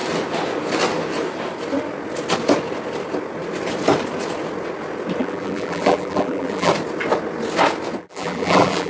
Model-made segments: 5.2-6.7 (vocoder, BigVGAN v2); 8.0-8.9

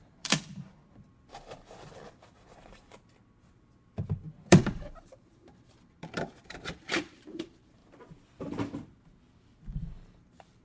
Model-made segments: 0.0-0.8 (vocoder, BigVGAN v2); 4.5-7.8; 10.2-10.6

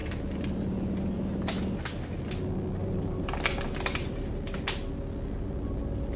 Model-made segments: 2.8-4.4 (vocoder, BigVGAN v2)

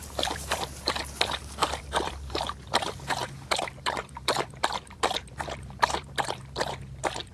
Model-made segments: 0.0-1.0 (vocoder, BigVGAN v2); 1.4-2.4; 3.2-7.3

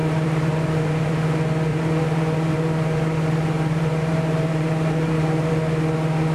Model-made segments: 0.0-1.1 (vocoder, BigVGAN v2); 1.7-5.5

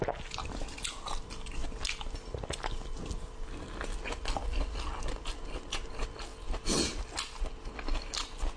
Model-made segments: none

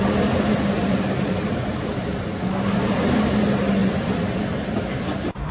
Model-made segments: 0.8-1.5 (vocoder, BigVGAN v2); 3.8-4.9

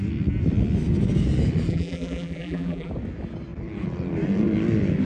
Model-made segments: 1.7-2.9 (vocoder, BigVGAN v2)